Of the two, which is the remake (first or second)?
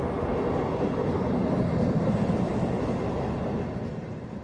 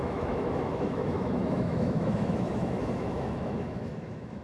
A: second